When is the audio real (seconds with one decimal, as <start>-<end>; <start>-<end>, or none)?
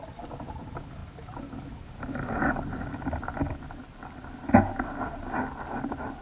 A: 0.0-6.2